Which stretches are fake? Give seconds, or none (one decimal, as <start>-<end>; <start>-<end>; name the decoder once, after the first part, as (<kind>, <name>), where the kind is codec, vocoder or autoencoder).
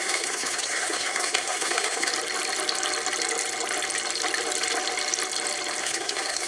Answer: 0.0-2.1 (codec, SNAC); 5.8-6.5